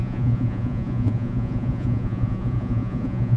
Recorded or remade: remade